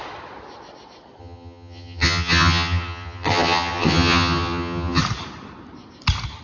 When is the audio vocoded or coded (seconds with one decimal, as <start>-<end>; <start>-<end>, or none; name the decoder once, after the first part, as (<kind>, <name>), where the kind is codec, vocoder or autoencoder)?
1.2-5.0 (vocoder, HiFi-GAN)